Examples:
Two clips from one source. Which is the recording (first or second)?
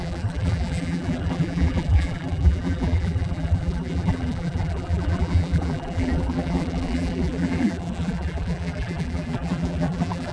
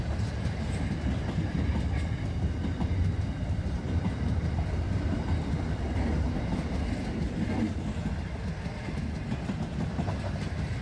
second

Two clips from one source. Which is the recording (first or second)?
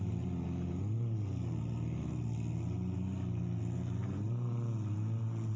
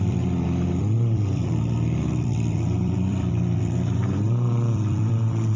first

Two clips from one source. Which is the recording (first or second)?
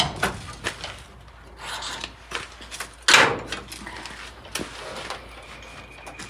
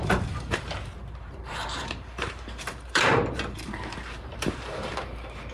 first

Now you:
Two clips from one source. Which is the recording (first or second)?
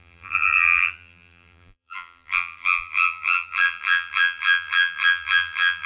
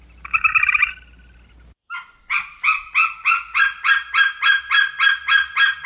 second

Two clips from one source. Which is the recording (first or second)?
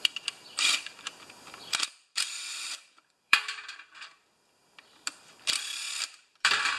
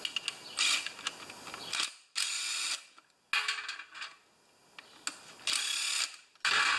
second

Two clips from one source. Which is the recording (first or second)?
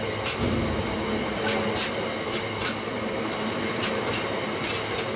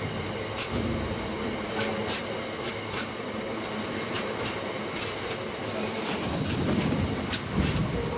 first